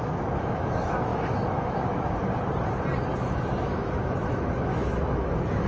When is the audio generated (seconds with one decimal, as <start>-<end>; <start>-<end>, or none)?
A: 0.0-2.2; 3.2-5.7